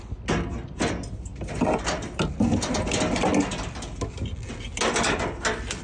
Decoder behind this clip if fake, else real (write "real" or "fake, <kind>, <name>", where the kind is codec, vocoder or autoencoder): real